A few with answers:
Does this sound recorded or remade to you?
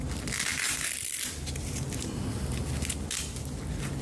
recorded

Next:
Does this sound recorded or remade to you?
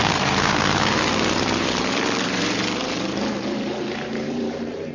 remade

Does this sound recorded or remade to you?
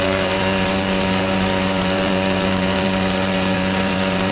remade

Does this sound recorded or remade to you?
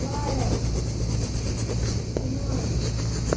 recorded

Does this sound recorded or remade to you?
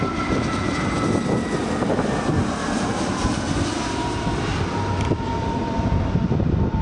remade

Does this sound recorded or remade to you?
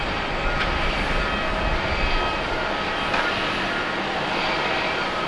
recorded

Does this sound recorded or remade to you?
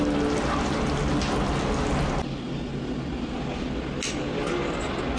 recorded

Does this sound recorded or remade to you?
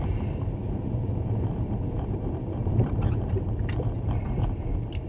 remade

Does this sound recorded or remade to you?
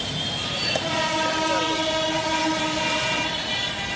remade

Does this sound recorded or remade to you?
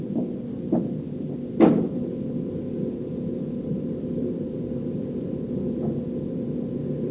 remade